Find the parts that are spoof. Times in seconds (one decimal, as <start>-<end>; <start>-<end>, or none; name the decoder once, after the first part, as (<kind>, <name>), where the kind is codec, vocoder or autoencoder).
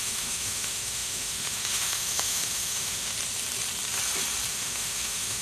0.0-3.1 (autoencoder, DAC-VAE); 4.5-5.4